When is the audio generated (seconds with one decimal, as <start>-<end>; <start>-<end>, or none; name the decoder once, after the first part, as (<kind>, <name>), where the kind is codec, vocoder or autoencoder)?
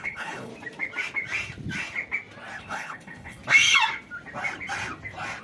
0.0-0.5 (codec, HILCodec); 2.6-3.4